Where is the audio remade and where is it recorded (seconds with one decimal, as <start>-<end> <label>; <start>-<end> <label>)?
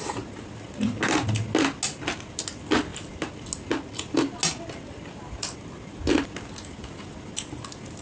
0.0-8.0 recorded